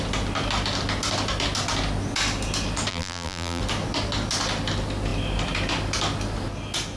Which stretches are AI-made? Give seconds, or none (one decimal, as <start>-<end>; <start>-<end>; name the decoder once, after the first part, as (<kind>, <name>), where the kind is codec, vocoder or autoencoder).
2.9-3.6 (vocoder, BigVGAN v2)